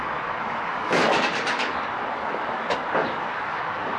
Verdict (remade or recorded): remade